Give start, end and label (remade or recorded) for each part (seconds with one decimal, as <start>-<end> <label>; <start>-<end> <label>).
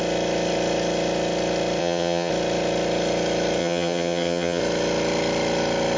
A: 0.0-1.8 recorded; 1.8-2.3 remade; 2.3-3.6 recorded; 3.6-4.6 remade; 4.6-6.0 recorded